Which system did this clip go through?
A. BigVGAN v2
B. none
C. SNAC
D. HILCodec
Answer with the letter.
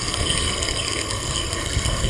C